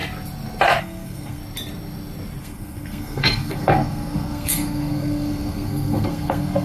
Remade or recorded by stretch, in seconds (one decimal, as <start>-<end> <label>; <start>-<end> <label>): 0.0-0.8 recorded; 0.8-1.4 remade; 1.4-2.4 recorded; 2.4-6.6 remade